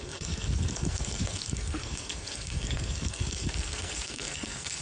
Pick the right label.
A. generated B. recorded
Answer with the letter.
A